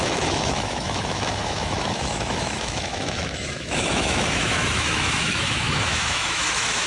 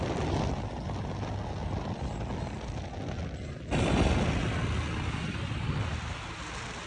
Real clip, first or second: second